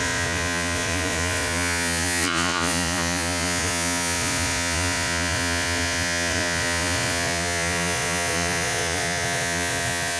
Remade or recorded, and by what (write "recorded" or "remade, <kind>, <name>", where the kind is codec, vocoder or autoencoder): remade, vocoder, Vocos